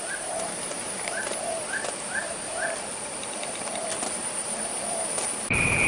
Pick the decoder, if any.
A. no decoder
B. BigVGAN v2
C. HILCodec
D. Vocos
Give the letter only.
B